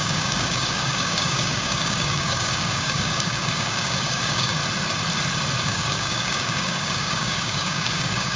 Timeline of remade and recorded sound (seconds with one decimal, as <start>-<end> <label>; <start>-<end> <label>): 0.0-4.6 remade; 4.6-5.6 recorded; 5.6-8.4 remade